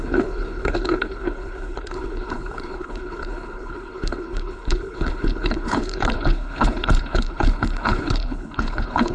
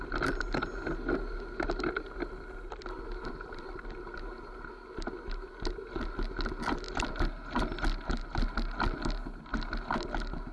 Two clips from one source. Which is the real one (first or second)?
second